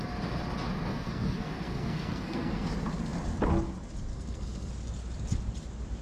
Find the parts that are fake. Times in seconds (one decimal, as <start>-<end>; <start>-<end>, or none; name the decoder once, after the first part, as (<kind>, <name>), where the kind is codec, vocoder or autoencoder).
0.9-2.7 (codec, SNAC); 4.1-4.7